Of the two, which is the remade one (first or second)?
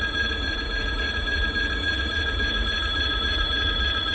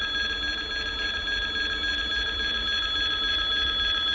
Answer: first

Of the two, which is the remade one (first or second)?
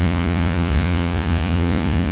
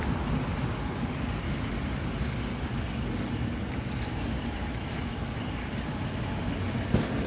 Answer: first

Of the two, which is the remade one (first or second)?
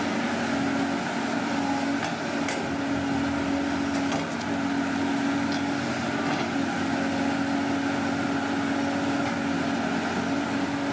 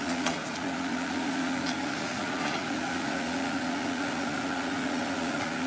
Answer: second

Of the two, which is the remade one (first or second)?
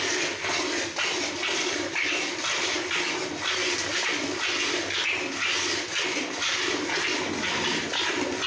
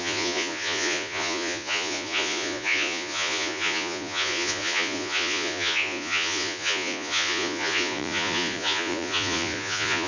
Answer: second